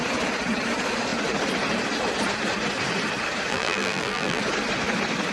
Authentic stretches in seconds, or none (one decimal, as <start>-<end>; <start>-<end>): 0.0-3.5; 4.4-5.3